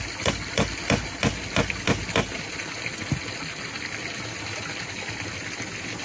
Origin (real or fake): real